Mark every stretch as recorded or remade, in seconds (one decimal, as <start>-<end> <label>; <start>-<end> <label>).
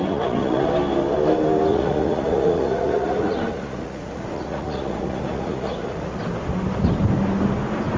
0.0-0.7 remade; 0.7-1.7 recorded; 1.7-6.2 remade; 6.2-8.0 recorded